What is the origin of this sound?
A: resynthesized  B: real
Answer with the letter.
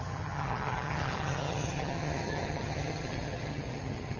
A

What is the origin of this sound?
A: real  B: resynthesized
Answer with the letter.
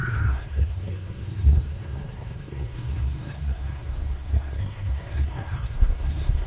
B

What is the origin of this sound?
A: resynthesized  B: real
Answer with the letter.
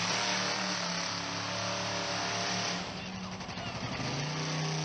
B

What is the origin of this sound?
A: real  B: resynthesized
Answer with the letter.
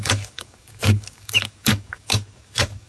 B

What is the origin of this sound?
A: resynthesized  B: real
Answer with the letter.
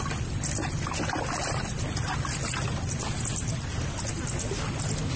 B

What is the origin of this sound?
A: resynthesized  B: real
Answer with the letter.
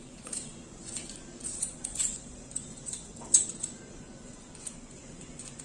A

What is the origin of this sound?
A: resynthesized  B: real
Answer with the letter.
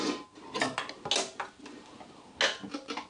B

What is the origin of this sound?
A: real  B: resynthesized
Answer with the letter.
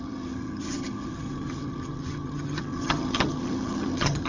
B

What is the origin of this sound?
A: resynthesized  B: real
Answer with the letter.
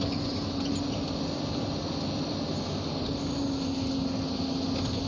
B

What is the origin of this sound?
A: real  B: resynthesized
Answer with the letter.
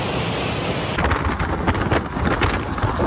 A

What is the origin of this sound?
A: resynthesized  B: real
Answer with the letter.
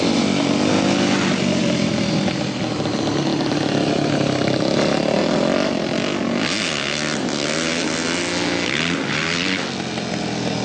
B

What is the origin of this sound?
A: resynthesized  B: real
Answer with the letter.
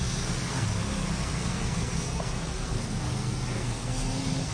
A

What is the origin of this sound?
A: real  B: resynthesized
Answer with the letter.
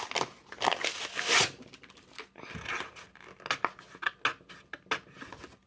A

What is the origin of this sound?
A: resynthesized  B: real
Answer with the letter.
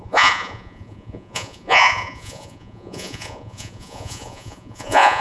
A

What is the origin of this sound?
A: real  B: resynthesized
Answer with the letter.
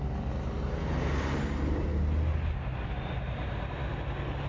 A